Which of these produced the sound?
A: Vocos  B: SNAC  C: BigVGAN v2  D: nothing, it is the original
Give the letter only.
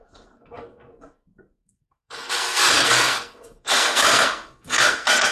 B